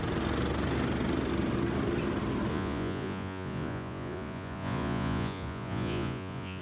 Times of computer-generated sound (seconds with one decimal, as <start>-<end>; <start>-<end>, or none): 2.5-6.6